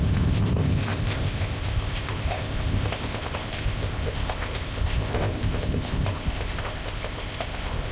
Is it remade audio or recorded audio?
remade